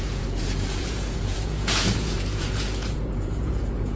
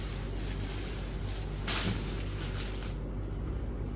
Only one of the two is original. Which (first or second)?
second